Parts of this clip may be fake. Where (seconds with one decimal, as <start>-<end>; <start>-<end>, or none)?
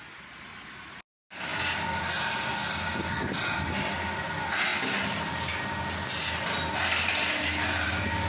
none